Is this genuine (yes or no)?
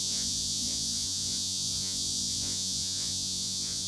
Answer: no